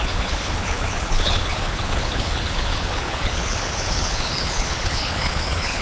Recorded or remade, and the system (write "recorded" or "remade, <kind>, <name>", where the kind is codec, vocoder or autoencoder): remade, codec, HILCodec